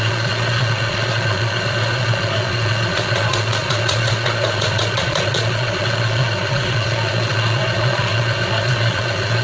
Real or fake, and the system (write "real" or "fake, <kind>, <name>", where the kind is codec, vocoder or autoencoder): fake, vocoder, Vocos